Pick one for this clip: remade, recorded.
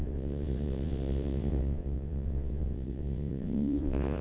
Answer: remade